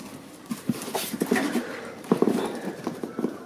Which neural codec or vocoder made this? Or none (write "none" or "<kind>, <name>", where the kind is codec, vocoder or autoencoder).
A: none